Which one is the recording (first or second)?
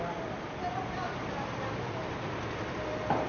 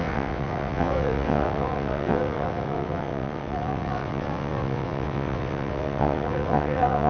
first